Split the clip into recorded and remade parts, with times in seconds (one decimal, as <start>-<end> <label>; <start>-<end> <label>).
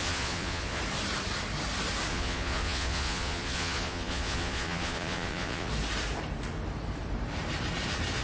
0.0-0.8 remade; 0.8-2.1 recorded; 2.1-5.7 remade; 5.7-8.2 recorded